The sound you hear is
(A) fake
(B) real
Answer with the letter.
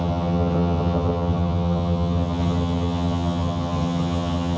A